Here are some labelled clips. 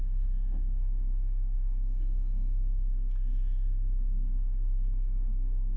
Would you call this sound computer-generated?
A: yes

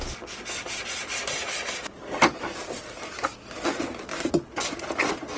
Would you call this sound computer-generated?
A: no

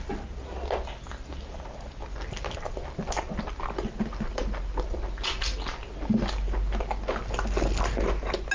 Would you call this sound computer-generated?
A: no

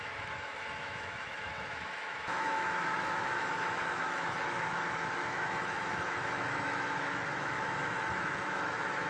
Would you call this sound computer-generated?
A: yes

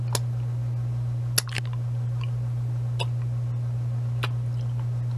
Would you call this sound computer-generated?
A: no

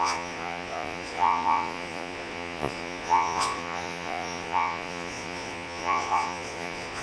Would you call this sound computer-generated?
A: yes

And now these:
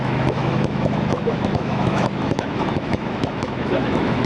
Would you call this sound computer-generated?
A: yes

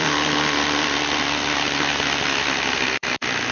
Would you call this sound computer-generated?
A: yes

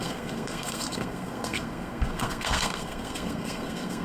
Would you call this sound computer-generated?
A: yes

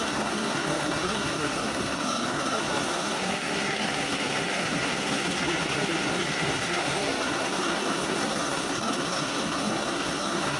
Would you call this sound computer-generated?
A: yes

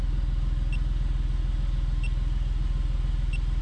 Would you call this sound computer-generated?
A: no